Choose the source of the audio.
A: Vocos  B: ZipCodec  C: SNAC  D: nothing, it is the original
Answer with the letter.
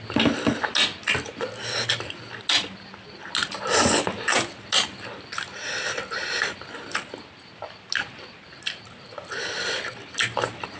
D